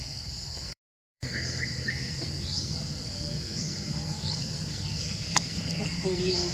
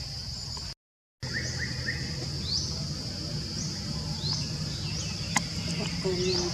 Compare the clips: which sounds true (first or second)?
second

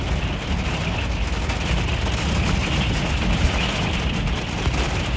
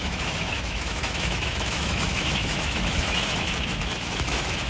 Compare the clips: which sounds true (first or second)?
first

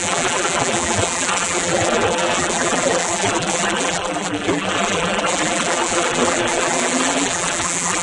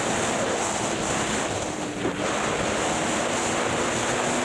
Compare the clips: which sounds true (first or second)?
second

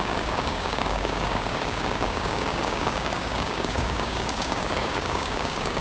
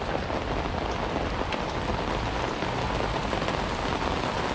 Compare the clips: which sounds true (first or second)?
second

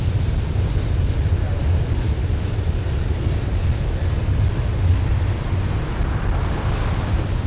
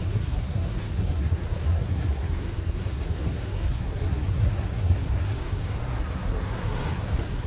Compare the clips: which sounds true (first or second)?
first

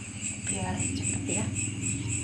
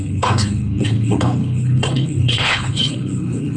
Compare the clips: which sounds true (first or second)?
first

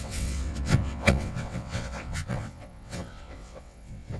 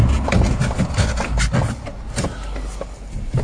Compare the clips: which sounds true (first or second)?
second